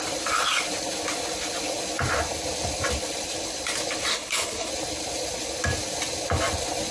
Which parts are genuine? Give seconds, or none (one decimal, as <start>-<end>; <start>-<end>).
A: 0.0-4.1; 4.7-6.9